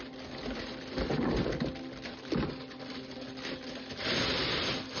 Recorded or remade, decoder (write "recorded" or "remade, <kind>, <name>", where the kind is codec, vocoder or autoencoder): recorded